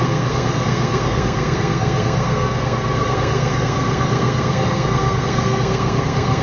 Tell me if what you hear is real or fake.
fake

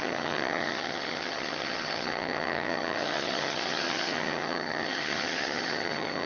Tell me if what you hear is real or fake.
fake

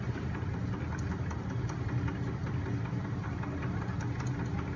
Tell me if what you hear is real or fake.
real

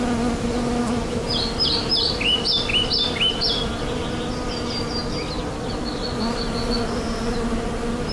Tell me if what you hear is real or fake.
real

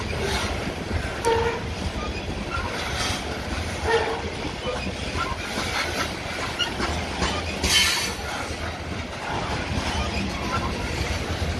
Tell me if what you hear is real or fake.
real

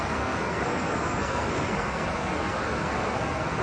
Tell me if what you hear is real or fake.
fake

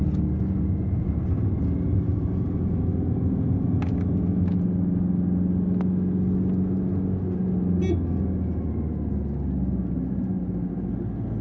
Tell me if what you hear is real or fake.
real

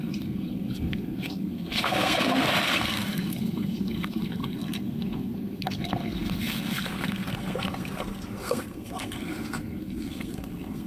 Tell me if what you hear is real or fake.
fake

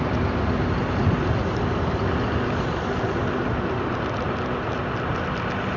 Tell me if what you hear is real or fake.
real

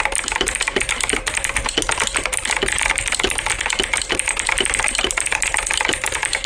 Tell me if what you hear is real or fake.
real